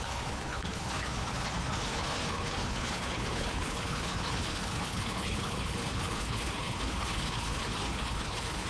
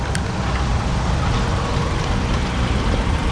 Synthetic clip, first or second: first